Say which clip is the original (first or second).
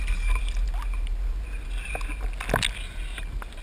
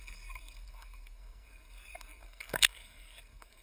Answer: first